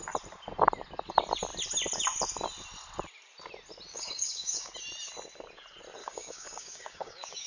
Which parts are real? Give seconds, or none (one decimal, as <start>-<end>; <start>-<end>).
0.0-3.9; 4.7-6.0